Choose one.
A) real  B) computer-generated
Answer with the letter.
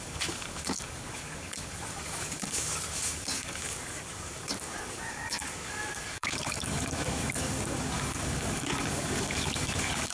B